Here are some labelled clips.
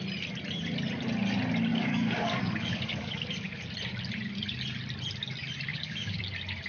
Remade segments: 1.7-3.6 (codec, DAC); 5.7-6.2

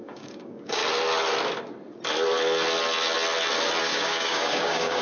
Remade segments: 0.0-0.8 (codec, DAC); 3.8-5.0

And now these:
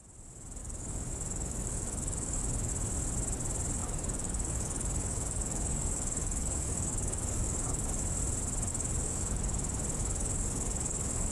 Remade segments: 0.6-2.7 (codec, DAC); 3.8-8.0; 8.7-9.4; 10.0-11.3

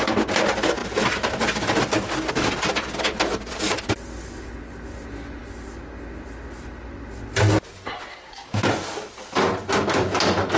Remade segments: 8.1-8.6 (codec, DAC)

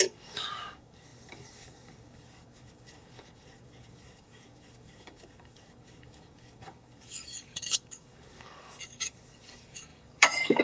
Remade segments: 0.0-10.6 (codec, DAC)

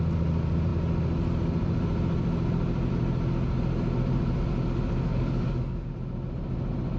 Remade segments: 5.1-5.9 (codec, DAC)